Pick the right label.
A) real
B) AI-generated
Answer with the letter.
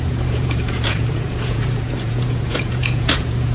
B